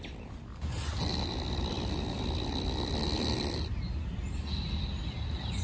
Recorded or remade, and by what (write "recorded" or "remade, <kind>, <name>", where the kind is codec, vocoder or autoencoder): recorded